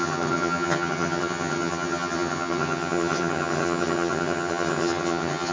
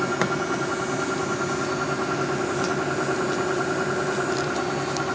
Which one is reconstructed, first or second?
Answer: first